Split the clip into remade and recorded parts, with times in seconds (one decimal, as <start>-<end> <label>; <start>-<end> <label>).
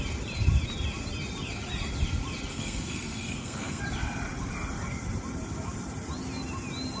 0.0-2.5 recorded; 2.5-3.8 remade; 3.8-7.0 recorded